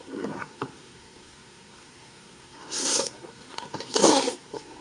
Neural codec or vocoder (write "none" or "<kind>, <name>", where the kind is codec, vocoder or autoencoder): codec, SNAC